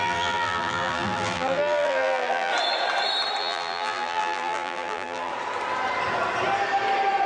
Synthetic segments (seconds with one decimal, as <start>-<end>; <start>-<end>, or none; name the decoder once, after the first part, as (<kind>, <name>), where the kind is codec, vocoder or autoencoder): 0.0-2.5 (vocoder, BigVGAN v2); 3.4-5.3